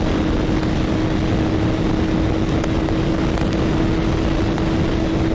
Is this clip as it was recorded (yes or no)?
yes